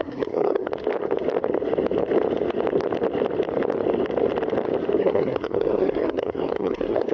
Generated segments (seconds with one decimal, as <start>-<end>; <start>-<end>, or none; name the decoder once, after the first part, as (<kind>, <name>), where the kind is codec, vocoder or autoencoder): 0.0-0.7 (codec, SNAC); 5.0-7.1